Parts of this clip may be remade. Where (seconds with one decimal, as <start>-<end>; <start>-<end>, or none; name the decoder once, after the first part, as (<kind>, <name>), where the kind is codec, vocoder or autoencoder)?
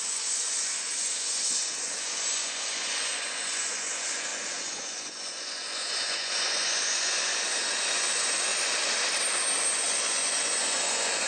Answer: 0.0-8.5 (vocoder, Vocos); 9.7-11.3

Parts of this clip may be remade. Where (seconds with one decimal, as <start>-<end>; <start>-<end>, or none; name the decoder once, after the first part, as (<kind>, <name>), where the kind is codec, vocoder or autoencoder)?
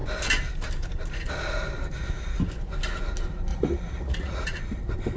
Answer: 3.5-4.6 (vocoder, Vocos)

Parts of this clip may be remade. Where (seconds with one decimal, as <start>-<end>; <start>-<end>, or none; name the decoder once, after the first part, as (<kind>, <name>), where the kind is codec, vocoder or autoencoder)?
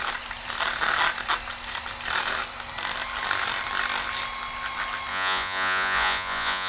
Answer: 5.1-6.7 (vocoder, Vocos)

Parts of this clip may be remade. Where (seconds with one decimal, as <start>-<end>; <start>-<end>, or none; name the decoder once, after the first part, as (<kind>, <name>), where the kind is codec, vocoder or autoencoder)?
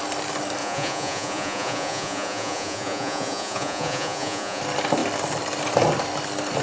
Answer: 0.6-4.6 (vocoder, Vocos)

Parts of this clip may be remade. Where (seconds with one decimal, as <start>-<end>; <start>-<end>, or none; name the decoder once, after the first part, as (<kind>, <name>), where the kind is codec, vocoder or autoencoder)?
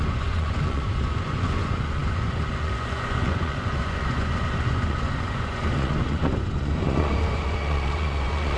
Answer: 0.0-8.6 (vocoder, Vocos)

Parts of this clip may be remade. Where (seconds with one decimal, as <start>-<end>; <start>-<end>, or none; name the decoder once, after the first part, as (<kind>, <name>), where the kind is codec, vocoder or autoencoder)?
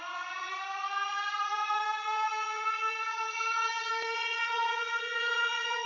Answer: 0.0-5.9 (vocoder, Vocos)